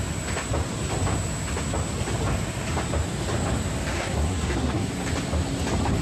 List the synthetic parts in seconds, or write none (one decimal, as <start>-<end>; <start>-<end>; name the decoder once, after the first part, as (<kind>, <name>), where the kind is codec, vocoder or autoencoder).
3.9-4.9 (codec, SNAC)